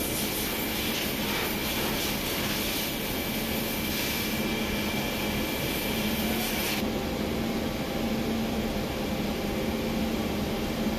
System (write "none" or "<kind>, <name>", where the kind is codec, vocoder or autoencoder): none